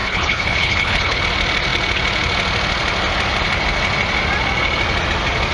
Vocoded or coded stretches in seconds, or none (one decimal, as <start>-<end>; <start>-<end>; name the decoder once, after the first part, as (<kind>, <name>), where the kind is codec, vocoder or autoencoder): 0.0-1.2 (codec, HILCodec)